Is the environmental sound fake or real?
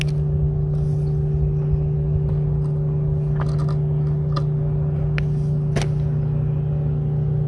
real